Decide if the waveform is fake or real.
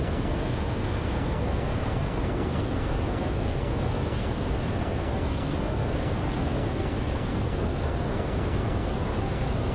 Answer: fake